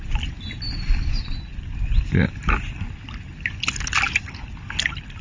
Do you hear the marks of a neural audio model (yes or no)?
no